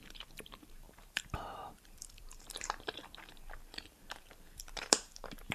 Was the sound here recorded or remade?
remade